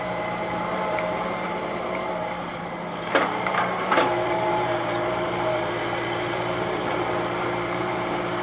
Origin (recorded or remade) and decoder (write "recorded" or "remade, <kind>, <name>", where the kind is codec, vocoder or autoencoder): remade, vocoder, BigVGAN v2